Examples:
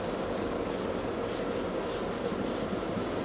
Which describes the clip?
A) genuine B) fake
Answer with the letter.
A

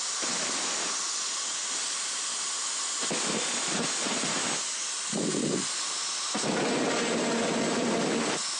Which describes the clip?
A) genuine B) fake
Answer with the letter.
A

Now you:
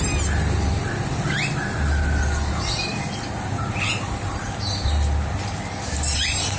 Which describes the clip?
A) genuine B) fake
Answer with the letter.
A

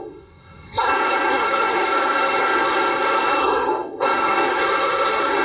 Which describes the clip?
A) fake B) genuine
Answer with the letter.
A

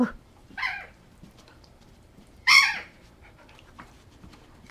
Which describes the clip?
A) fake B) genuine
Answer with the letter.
A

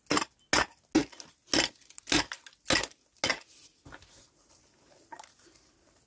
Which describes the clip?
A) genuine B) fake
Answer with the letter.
A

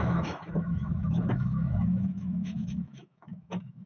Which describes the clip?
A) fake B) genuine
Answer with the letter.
A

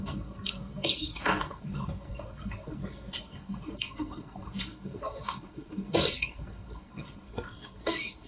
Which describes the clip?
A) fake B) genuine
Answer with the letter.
A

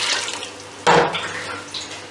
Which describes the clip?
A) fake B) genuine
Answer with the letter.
B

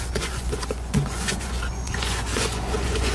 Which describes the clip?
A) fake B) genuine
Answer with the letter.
A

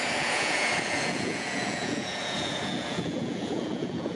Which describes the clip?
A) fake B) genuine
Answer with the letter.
A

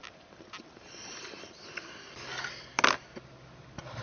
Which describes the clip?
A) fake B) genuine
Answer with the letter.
B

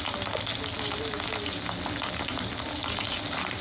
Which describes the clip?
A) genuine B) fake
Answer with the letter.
A